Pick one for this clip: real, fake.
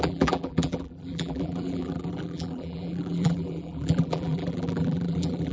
fake